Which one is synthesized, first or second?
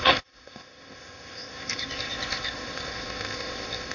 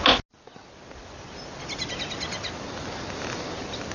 first